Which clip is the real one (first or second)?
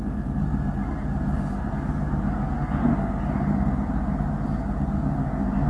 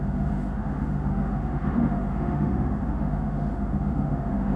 first